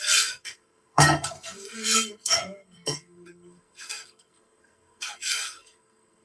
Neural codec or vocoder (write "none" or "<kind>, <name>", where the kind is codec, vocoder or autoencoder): codec, SNAC